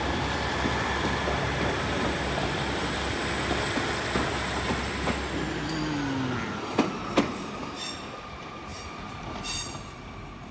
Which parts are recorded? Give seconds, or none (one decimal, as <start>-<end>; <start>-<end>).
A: 0.0-10.5